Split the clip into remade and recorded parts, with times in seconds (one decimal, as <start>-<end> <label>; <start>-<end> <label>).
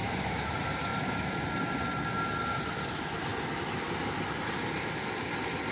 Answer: 0.0-0.5 remade; 0.5-5.7 recorded